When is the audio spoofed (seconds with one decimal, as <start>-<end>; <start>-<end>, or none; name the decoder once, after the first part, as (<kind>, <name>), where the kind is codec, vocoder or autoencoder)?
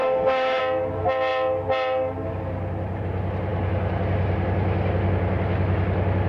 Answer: 0.0-0.6 (autoencoder, DAC-VAE)